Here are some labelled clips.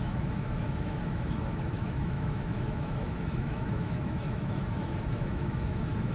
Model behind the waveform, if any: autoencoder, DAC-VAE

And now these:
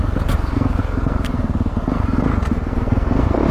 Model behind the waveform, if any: codec, SNAC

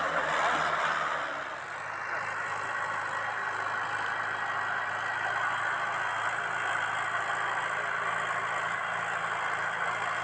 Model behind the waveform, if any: none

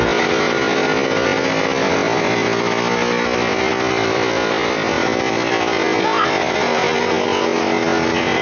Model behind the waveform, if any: none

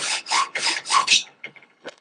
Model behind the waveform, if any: codec, HILCodec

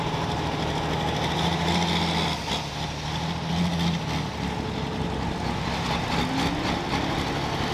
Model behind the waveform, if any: none